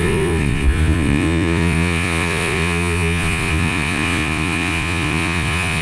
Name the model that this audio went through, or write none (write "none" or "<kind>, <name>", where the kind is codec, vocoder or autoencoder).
vocoder, Vocos